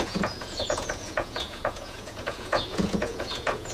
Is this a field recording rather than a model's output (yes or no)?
no